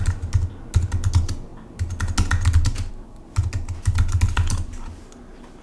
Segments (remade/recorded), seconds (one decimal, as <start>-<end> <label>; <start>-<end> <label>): 0.0-5.6 recorded